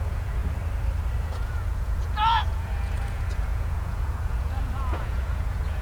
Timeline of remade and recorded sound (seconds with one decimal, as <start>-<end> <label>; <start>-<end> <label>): 0.0-0.4 remade; 0.4-1.2 recorded; 1.2-5.8 remade